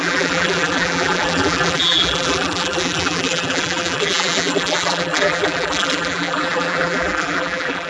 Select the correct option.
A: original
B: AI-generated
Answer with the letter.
B